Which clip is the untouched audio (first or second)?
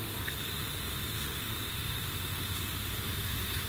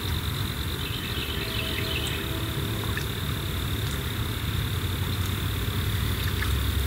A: second